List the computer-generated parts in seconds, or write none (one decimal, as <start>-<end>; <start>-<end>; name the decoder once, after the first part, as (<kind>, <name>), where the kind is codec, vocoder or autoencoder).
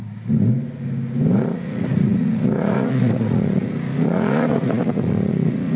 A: 1.4-5.8 (vocoder, Vocos)